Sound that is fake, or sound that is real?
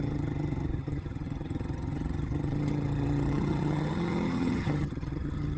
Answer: fake